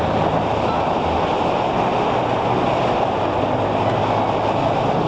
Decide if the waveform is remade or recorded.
recorded